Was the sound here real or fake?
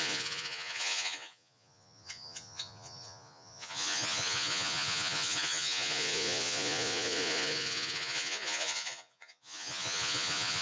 fake